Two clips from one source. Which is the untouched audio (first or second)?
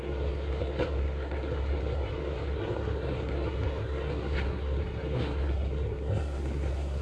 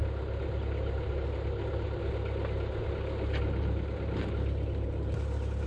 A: second